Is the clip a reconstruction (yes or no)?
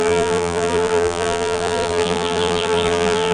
yes